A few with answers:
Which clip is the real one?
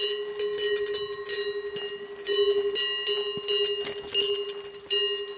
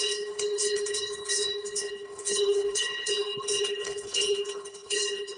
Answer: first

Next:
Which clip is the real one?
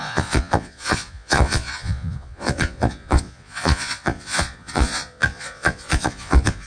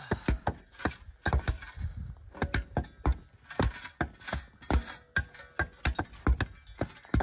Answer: second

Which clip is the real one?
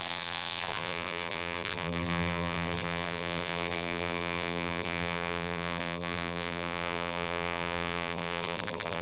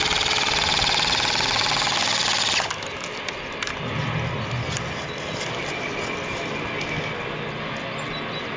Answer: second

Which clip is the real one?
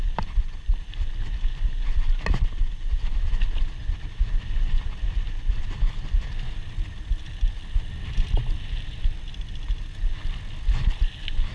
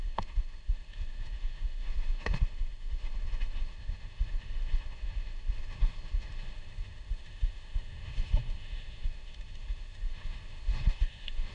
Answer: first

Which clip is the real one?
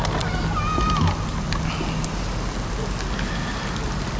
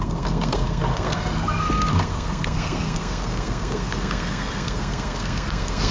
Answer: first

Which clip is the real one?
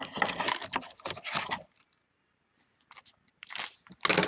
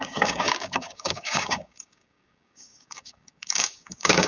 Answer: first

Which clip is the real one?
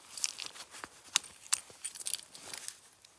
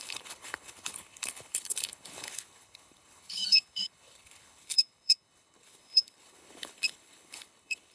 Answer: first